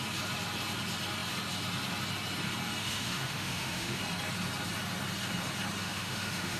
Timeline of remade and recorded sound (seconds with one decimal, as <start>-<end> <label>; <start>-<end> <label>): 0.0-2.8 recorded; 2.8-4.0 remade; 4.0-5.8 recorded; 5.8-6.6 remade